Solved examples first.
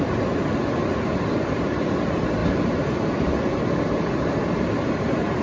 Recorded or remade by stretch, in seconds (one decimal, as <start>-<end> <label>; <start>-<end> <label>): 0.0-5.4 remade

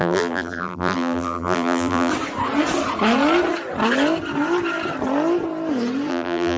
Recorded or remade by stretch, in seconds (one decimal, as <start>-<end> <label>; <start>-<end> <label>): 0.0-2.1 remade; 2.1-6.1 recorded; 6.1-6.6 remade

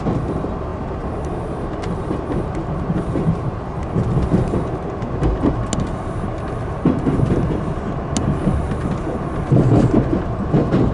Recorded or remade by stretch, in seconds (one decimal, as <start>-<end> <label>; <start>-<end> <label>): 0.0-10.9 recorded

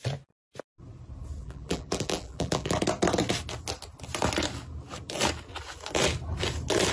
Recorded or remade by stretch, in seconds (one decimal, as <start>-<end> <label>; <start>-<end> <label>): 0.0-1.4 recorded; 1.4-2.8 remade; 2.8-6.9 recorded